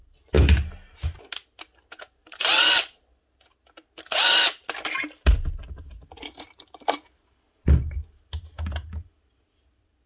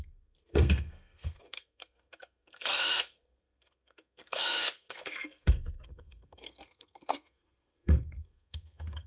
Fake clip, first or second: second